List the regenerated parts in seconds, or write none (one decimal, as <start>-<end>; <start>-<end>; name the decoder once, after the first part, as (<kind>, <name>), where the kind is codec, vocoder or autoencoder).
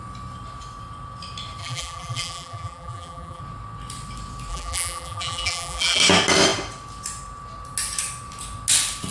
1.6-3.4 (vocoder, BigVGAN v2); 4.5-6.0